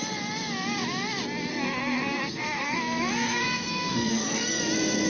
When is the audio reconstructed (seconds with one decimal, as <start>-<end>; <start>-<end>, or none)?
1.5-4.6